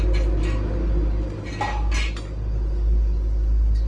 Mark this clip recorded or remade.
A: recorded